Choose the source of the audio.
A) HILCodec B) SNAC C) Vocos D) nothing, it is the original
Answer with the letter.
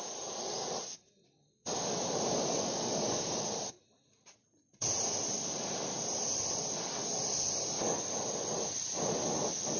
D